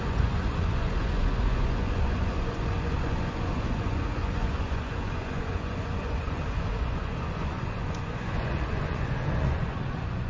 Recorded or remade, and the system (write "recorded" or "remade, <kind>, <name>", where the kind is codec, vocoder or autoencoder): remade, vocoder, Vocos